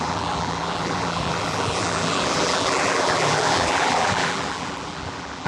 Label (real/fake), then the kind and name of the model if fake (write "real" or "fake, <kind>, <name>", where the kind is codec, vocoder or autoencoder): fake, vocoder, BigVGAN v2